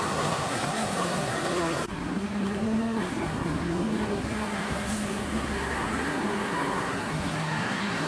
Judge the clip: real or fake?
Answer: fake